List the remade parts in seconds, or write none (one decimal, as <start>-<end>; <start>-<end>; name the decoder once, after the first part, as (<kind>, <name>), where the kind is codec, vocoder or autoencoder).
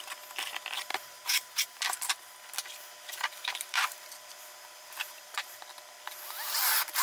0.9-2.1 (vocoder, BigVGAN v2); 3.4-5.6